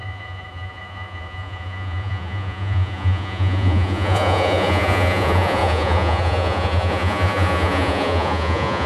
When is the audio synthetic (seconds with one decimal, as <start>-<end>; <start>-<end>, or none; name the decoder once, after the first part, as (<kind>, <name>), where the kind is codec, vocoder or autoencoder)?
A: 0.0-8.9 (vocoder, Vocos)